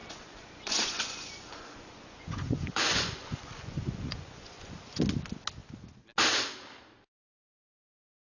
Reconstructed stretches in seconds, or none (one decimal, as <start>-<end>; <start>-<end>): 0.0-5.0